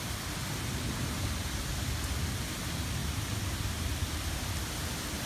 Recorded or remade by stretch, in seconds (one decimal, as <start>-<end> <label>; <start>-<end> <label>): 0.0-5.3 recorded